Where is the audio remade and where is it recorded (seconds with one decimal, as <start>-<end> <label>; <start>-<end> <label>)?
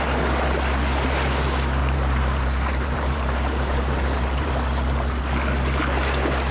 0.0-1.8 recorded; 1.8-5.2 remade; 5.2-6.5 recorded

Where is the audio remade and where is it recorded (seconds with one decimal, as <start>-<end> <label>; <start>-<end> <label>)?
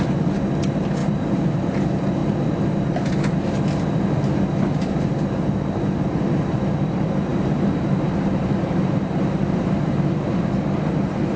0.0-1.0 recorded; 1.0-1.6 remade; 1.6-7.3 recorded; 7.3-10.2 remade; 10.2-11.4 recorded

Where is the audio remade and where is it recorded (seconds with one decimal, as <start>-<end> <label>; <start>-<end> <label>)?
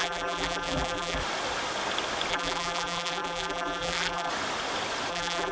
0.0-1.2 remade; 1.2-2.3 recorded; 2.3-4.3 remade; 4.3-5.1 recorded; 5.1-5.5 remade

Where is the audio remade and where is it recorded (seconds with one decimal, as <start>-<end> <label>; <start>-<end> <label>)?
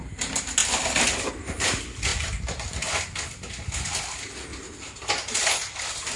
0.0-0.6 recorded; 0.6-1.3 remade; 1.3-4.5 recorded; 4.5-5.1 remade; 5.1-6.2 recorded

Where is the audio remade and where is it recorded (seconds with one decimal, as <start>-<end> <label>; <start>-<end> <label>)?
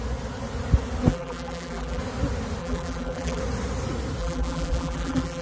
0.0-1.1 recorded; 1.1-2.0 remade; 2.0-2.6 recorded; 2.6-3.4 remade; 3.4-4.2 recorded; 4.2-5.4 remade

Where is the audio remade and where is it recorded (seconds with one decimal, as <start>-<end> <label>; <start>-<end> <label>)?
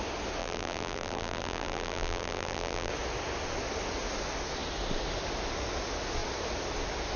0.0-0.4 recorded; 0.4-2.9 remade; 2.9-7.2 recorded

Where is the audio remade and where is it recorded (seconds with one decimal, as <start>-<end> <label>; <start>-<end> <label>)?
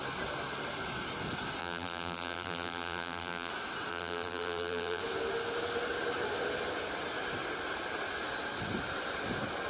0.0-1.6 recorded; 1.6-3.5 remade; 3.5-3.9 recorded; 3.9-5.0 remade; 5.0-9.7 recorded